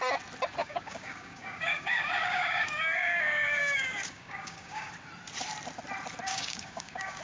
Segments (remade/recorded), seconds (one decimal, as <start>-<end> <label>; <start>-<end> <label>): 0.0-0.6 recorded; 0.6-4.9 remade; 4.9-6.3 recorded; 6.3-7.2 remade